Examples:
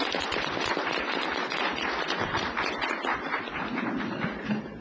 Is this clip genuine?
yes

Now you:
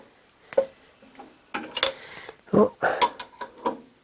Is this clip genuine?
yes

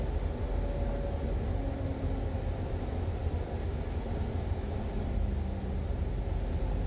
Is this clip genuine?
yes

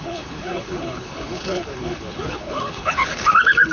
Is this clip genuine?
no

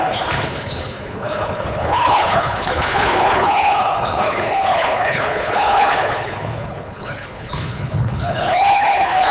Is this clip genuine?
no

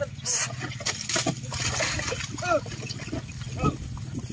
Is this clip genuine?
yes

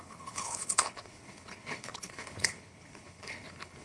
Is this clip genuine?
no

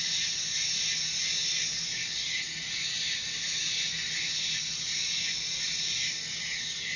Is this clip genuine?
yes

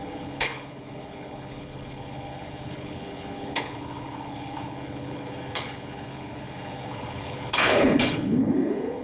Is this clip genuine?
no